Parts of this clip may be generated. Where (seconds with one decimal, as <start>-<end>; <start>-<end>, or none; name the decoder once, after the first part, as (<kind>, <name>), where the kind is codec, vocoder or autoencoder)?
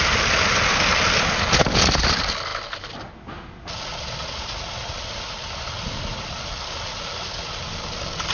none